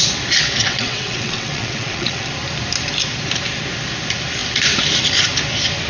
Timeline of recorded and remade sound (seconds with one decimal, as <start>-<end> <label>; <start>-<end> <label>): 0.0-0.6 recorded; 0.6-2.3 remade; 2.3-5.9 recorded